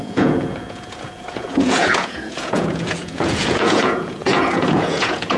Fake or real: fake